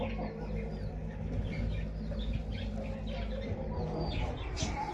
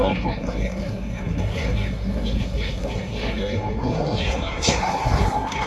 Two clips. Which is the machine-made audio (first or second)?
second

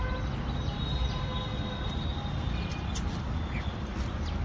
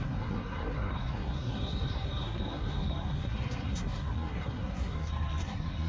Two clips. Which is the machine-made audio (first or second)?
second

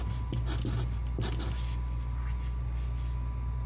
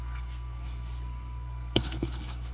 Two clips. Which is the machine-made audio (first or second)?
second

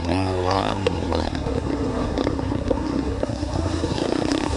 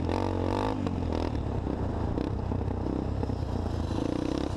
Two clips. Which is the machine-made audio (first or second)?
first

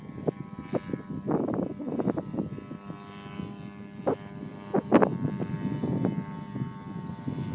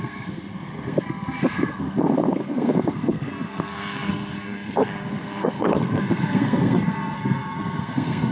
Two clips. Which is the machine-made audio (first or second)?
second